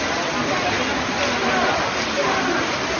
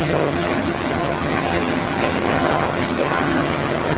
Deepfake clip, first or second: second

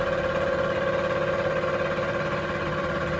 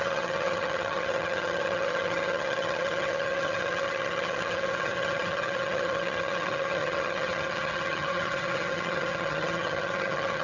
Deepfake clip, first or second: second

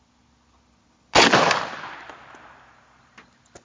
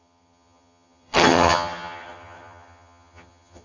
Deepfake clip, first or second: second